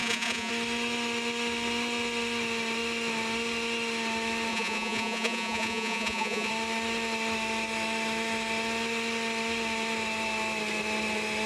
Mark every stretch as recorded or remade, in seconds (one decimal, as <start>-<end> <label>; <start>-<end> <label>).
0.0-0.5 remade; 0.5-4.5 recorded; 4.5-6.5 remade; 6.5-11.5 recorded